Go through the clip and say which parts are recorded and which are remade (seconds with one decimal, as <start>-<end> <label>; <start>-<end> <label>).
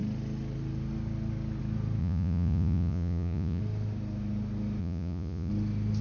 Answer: 0.0-2.0 recorded; 2.0-3.6 remade; 3.6-4.8 recorded; 4.8-5.5 remade; 5.5-6.0 recorded